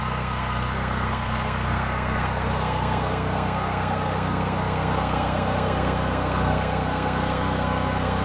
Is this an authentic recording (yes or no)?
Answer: no